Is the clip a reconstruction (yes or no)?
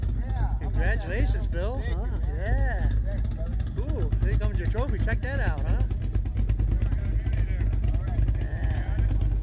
no